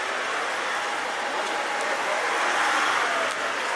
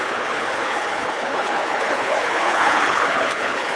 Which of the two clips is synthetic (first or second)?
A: second